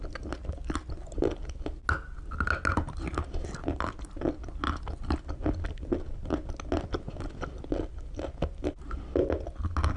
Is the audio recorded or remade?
recorded